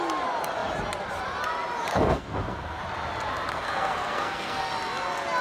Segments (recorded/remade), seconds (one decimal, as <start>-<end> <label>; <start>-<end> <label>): 0.0-1.9 recorded; 1.9-2.8 remade; 2.8-3.5 recorded; 3.5-4.7 remade; 4.7-5.4 recorded